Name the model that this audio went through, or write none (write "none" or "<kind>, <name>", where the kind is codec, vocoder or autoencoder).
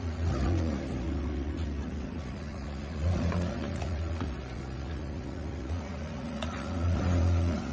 vocoder, Vocos